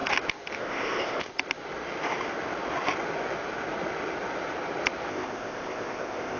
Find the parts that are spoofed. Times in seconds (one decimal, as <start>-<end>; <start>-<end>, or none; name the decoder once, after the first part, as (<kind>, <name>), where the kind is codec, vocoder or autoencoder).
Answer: 0.6-1.3 (codec, ZipCodec); 5.1-6.4